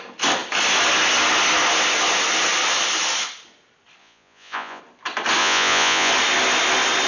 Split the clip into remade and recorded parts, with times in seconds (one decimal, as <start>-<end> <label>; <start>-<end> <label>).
0.0-4.0 recorded; 4.0-4.8 remade; 4.8-5.4 recorded; 5.4-6.1 remade; 6.1-7.1 recorded

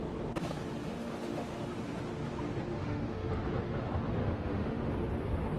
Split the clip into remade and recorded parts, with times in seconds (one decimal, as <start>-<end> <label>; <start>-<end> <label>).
0.0-0.9 recorded; 0.9-1.7 remade; 1.7-2.7 recorded; 2.7-3.3 remade; 3.3-4.2 recorded; 4.2-4.9 remade; 4.9-5.6 recorded